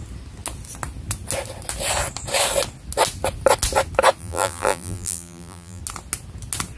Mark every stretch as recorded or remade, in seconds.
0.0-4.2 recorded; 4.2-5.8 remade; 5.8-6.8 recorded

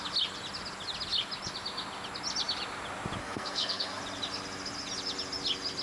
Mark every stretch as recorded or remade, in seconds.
0.0-3.2 recorded; 3.2-4.0 remade; 4.0-5.8 recorded

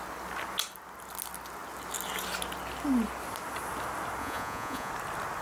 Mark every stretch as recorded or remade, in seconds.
0.0-4.2 recorded; 4.2-4.9 remade; 4.9-5.4 recorded

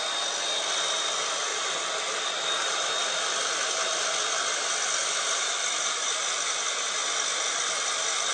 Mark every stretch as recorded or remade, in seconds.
0.0-8.3 recorded